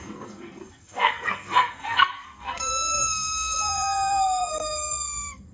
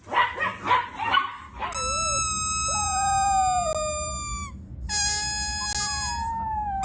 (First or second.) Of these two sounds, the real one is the second